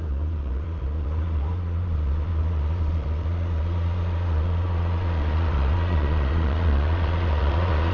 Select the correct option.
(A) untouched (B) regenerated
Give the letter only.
B